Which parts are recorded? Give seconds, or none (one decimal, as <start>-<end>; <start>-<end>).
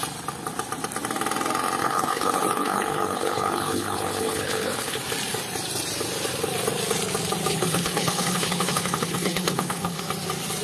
0.0-1.8; 5.0-7.5; 10.0-10.6